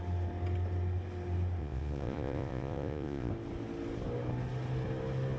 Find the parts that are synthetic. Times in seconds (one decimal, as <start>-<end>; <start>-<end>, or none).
1.6-3.3